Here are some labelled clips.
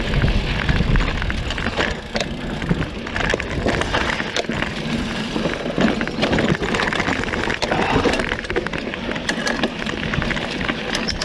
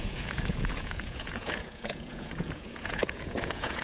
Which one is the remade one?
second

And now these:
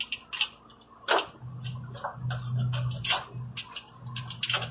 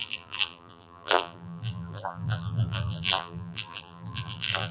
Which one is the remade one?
second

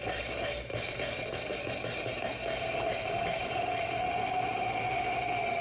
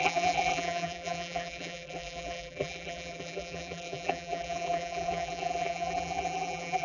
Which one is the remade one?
second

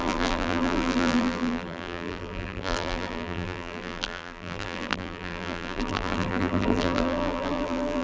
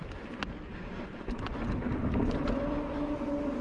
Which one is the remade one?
first